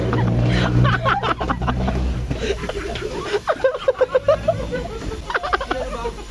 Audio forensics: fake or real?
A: fake